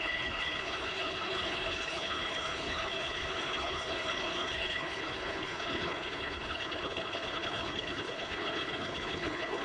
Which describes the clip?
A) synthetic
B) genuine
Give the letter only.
A